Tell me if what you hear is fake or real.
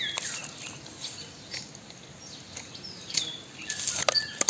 real